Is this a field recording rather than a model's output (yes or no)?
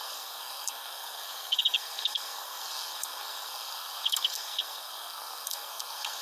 no